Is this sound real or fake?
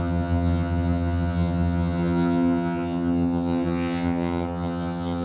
fake